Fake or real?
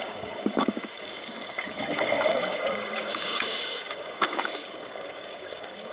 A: fake